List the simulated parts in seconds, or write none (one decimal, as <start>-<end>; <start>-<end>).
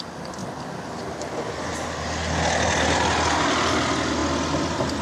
none